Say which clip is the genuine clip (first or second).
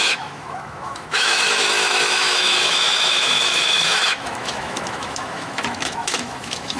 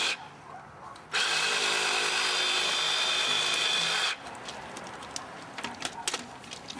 second